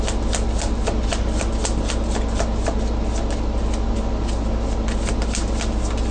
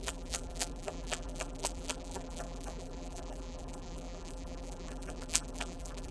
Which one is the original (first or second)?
first